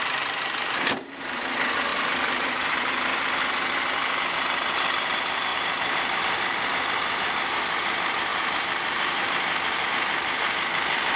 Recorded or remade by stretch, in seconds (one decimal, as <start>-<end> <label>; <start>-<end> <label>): 0.0-3.1 remade; 3.1-4.4 recorded; 4.4-11.2 remade